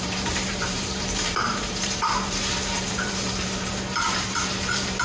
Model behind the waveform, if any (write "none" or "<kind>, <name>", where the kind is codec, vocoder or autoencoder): vocoder, BigVGAN v2